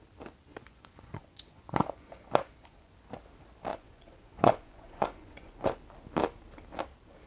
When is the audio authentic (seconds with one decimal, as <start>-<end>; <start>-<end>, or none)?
0.0-0.5; 2.9-3.7; 5.8-7.3